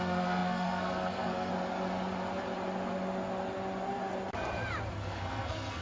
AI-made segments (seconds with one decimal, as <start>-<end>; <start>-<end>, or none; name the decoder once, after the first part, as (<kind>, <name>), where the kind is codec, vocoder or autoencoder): 0.0-1.5 (codec, SNAC); 4.9-5.8